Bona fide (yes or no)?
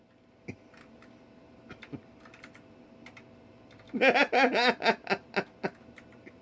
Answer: yes